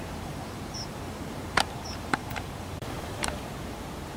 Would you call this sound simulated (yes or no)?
yes